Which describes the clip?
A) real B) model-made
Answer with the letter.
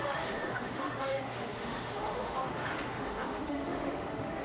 B